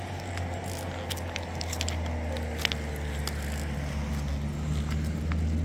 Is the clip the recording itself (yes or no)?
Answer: yes